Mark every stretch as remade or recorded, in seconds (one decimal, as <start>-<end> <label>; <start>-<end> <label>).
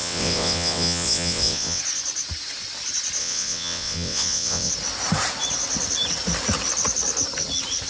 0.0-1.8 remade; 1.8-3.2 recorded; 3.2-4.7 remade; 4.7-7.9 recorded